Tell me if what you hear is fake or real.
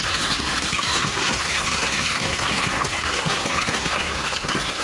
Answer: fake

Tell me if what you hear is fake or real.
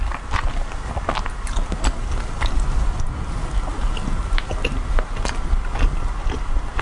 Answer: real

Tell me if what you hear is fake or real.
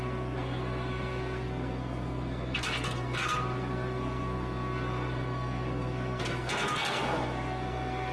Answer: fake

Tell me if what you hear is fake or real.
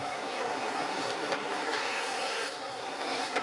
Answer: fake